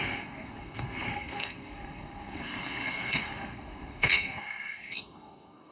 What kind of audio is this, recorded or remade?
remade